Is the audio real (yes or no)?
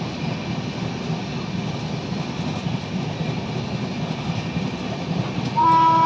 yes